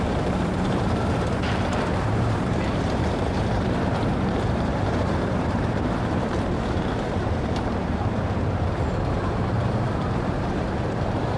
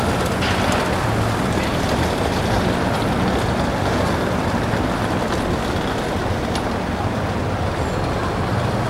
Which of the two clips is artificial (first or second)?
first